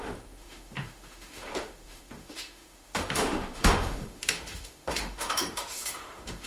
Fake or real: fake